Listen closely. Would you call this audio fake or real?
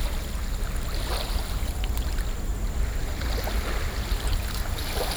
real